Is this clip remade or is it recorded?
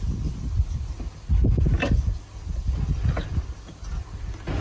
recorded